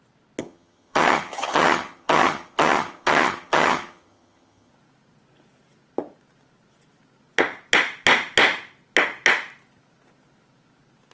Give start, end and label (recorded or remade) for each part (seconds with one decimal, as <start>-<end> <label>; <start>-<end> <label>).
0.0-0.4 recorded; 0.4-4.7 remade; 4.7-11.1 recorded